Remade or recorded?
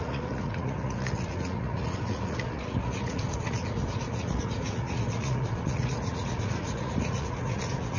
remade